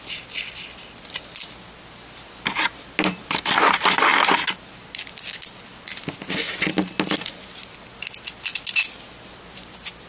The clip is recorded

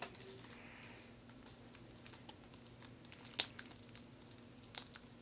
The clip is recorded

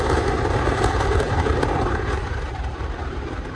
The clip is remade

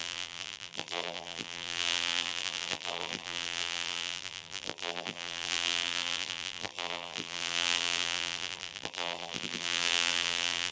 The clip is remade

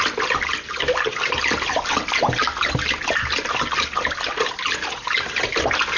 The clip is recorded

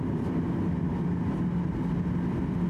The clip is recorded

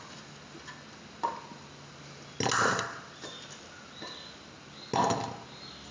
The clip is recorded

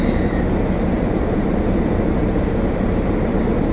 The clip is remade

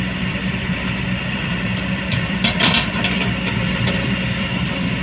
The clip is remade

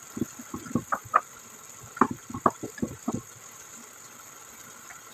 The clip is recorded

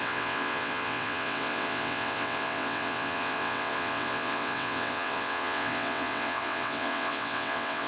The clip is remade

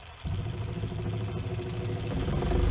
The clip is recorded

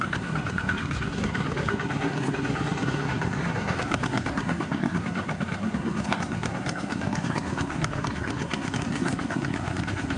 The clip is remade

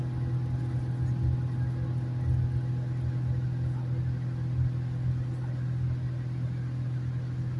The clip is recorded